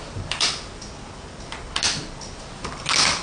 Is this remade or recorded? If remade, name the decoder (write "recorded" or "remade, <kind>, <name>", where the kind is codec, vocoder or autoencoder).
recorded